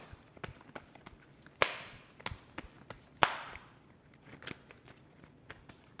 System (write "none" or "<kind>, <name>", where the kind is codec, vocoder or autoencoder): none